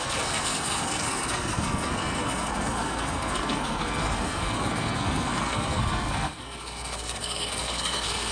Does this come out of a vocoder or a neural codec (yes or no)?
yes